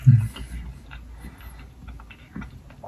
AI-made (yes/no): no